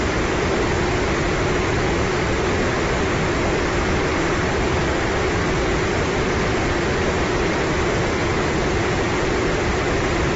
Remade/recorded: remade